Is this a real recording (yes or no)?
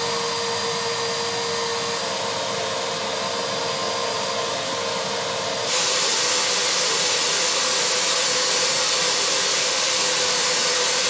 yes